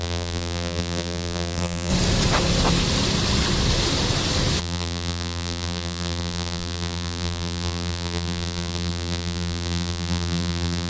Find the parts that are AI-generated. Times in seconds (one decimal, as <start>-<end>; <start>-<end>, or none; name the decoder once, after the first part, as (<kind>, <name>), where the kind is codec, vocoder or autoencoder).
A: 0.0-1.9 (vocoder, BigVGAN v2); 4.6-10.9